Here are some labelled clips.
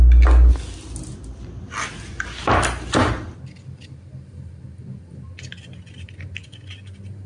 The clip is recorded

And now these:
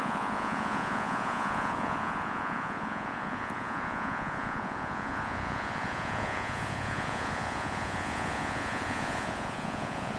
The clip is remade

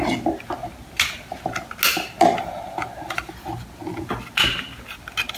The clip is recorded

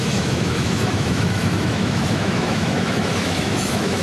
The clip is remade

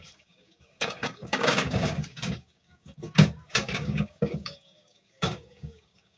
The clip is remade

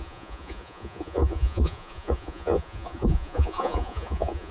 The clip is remade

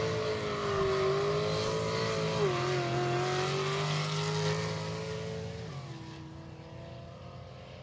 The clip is recorded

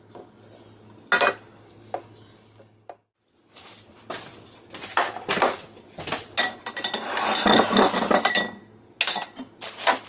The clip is recorded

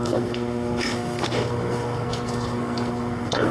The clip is remade